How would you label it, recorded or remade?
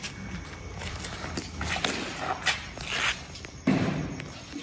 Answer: recorded